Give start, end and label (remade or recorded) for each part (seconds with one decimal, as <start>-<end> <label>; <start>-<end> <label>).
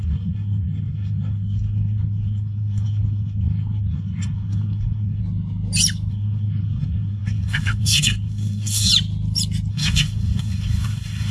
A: 0.0-5.2 remade; 5.2-6.1 recorded; 6.1-8.9 remade; 8.9-9.7 recorded; 9.7-11.3 remade